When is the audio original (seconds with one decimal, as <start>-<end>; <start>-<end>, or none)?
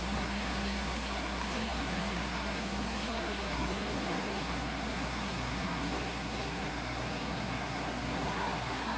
none